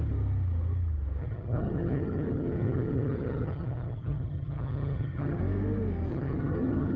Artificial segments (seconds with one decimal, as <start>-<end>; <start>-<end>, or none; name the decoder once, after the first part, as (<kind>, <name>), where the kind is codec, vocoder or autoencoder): 1.2-5.4 (vocoder, HiFi-GAN); 6.1-7.0